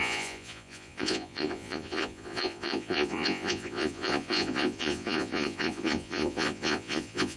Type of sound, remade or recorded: remade